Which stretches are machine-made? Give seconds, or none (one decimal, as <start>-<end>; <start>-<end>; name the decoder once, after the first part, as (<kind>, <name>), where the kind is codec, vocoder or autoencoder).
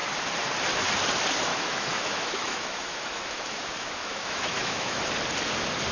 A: 1.5-5.0 (autoencoder, DAC-VAE)